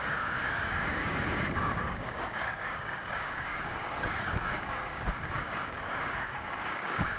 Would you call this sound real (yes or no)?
no